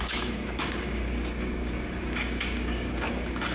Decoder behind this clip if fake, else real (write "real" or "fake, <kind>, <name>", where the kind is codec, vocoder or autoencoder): fake, codec, DAC